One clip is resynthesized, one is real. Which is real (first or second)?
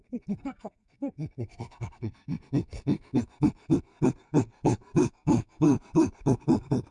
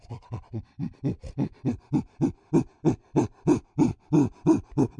second